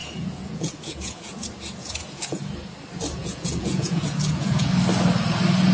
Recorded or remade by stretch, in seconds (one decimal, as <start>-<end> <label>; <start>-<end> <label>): 0.0-1.3 remade; 1.3-1.8 recorded; 1.8-2.4 remade; 2.4-3.2 recorded; 3.2-4.7 remade; 4.7-5.7 recorded